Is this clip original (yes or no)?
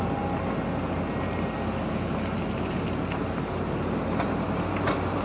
yes